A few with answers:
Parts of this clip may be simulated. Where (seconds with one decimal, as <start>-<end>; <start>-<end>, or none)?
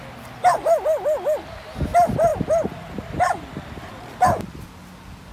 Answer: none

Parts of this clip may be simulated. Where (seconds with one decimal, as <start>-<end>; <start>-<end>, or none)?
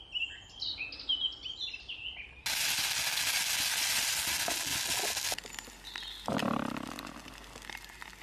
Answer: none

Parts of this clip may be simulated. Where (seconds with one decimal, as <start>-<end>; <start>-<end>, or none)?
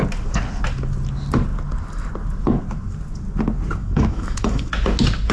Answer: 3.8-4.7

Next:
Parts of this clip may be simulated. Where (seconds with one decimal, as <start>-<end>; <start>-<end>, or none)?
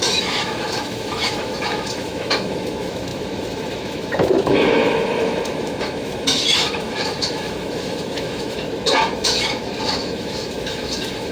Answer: 0.0-11.3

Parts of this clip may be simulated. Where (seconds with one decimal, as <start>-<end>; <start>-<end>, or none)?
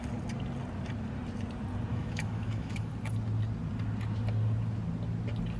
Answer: 1.9-2.9